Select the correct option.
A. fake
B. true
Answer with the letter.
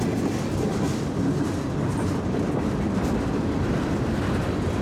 A